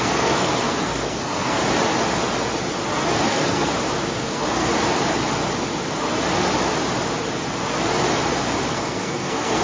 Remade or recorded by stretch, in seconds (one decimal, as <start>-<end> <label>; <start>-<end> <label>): 0.0-1.6 remade; 1.6-3.3 recorded; 3.3-3.7 remade; 3.7-4.2 recorded; 4.2-4.7 remade; 4.7-8.7 recorded; 8.7-9.6 remade